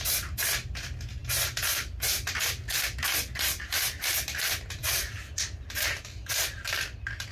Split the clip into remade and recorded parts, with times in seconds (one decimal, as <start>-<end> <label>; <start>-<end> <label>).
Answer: 0.0-7.3 recorded